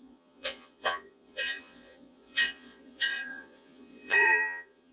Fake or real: fake